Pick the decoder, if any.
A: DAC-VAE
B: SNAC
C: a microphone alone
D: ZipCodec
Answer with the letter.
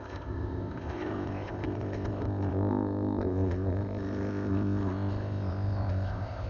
D